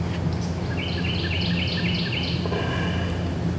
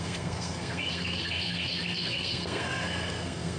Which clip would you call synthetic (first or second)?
second